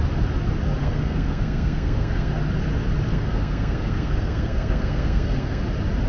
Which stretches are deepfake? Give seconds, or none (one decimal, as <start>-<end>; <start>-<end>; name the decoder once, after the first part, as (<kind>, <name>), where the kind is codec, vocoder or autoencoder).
0.8-2.3 (codec, SNAC); 3.1-5.6